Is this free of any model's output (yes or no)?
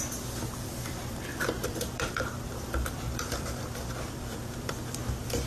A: no